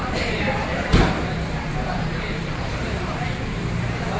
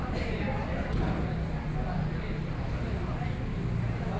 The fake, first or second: first